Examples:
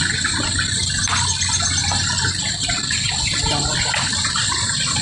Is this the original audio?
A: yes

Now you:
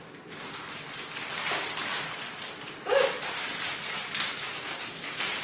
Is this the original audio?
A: yes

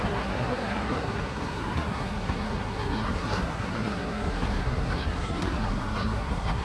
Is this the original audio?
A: no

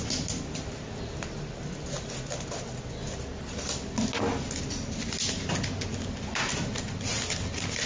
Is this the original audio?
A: yes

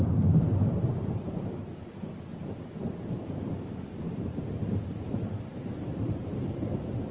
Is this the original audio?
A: no